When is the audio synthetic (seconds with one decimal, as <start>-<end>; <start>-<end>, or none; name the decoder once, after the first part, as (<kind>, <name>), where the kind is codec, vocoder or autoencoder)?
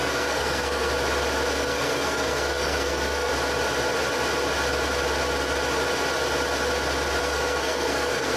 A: 0.0-0.9 (codec, SNAC); 1.5-3.3; 7.2-8.4